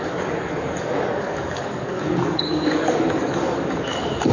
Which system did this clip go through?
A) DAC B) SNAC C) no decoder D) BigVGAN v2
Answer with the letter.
A